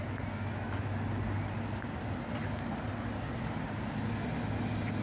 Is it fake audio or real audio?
real